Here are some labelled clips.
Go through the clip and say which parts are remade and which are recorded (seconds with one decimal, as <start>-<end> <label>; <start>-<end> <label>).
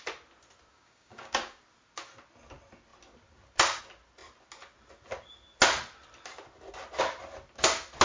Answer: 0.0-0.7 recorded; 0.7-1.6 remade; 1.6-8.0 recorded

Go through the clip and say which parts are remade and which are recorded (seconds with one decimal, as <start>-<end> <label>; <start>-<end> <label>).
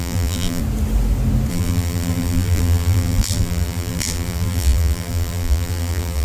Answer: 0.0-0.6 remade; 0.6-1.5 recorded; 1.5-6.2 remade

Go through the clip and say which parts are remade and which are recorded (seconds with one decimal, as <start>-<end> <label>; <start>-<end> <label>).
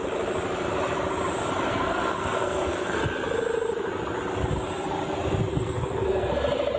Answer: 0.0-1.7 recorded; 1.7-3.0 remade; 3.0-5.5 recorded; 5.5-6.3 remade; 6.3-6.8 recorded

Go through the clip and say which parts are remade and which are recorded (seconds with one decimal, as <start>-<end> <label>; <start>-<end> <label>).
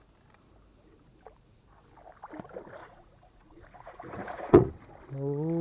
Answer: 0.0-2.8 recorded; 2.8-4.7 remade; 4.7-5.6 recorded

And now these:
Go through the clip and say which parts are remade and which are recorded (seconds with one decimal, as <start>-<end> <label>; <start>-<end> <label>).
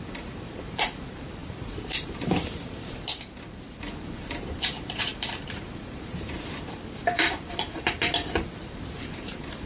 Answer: 0.0-3.1 remade; 3.1-3.8 recorded; 3.8-9.7 remade